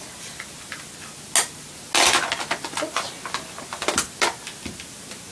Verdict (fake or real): real